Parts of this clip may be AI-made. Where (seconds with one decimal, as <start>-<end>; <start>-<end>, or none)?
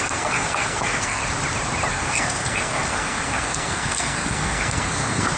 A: 0.0-1.2; 1.9-5.4